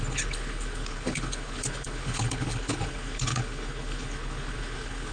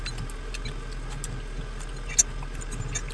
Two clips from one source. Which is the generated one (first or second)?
first